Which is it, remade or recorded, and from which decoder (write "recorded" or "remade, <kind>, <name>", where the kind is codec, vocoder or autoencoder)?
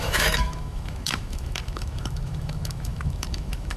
remade, autoencoder, DAC-VAE